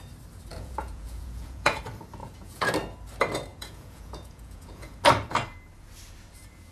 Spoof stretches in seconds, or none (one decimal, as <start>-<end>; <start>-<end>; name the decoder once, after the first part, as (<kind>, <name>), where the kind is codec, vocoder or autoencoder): 0.5-1.8 (vocoder, Vocos); 2.2-2.7; 3.5-5.0